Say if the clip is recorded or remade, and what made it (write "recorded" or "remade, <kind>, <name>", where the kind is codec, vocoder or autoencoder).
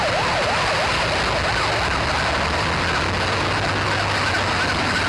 recorded